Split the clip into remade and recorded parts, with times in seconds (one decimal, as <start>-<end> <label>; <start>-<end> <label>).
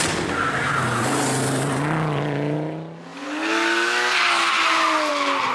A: 0.0-5.5 recorded